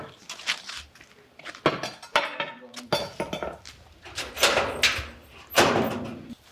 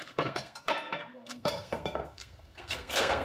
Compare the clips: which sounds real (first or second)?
first